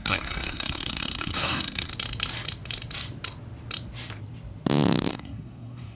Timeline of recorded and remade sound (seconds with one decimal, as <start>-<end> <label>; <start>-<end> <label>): 0.0-1.9 remade; 1.9-5.1 recorded; 5.1-5.9 remade